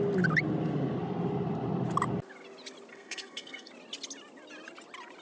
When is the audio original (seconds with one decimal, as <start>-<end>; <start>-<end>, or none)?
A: 0.0-2.9; 3.7-5.2